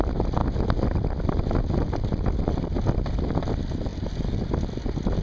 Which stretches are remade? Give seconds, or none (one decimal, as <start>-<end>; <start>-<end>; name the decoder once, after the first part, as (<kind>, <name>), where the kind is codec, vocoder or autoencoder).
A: none